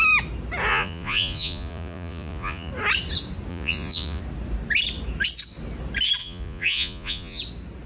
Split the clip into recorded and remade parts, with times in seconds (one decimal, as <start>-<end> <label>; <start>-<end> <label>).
0.0-0.7 recorded; 0.7-2.7 remade; 2.7-3.5 recorded; 3.5-4.2 remade; 4.2-6.2 recorded; 6.2-7.4 remade; 7.4-7.9 recorded